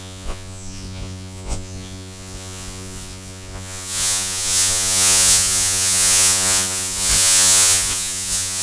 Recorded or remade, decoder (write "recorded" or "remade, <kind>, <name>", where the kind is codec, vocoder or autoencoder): remade, vocoder, Vocos